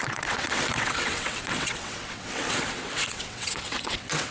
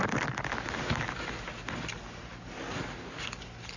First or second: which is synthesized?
first